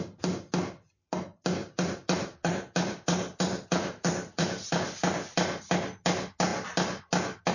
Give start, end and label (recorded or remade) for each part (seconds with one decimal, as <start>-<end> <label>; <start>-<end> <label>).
0.0-1.6 recorded; 1.6-4.8 remade; 4.8-7.5 recorded